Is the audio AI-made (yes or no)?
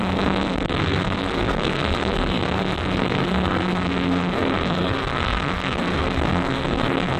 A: yes